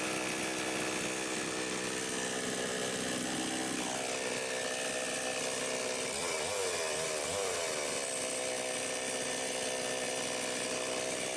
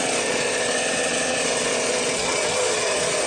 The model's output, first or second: second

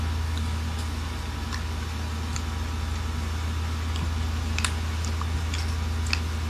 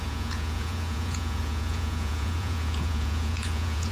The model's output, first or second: second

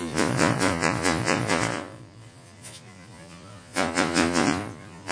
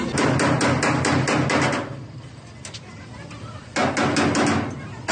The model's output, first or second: first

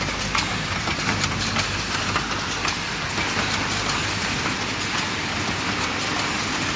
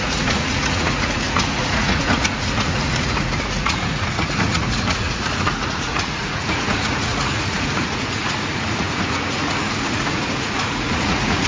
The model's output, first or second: second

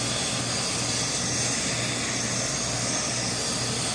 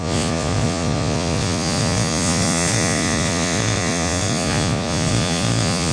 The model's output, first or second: second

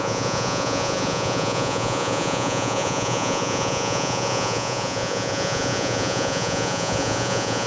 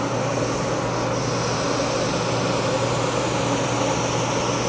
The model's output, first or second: first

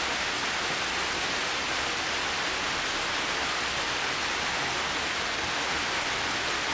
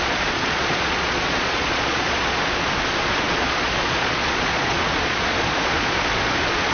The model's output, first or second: second